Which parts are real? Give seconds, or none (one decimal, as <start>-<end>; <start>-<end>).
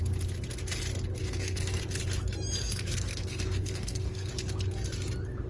0.0-1.2; 1.8-2.6; 4.3-5.5